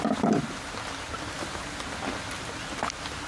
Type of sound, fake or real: real